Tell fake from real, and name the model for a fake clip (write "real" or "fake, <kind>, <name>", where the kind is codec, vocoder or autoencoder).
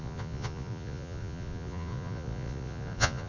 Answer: fake, vocoder, Vocos